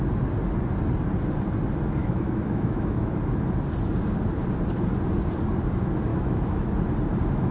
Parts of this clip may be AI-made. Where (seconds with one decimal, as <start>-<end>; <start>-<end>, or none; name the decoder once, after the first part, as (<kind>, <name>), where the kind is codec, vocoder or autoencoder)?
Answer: 2.0-3.0 (autoencoder, DAC-VAE); 6.1-6.6